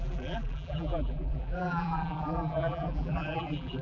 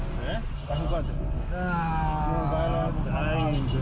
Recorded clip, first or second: second